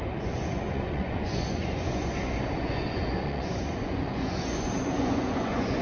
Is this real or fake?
fake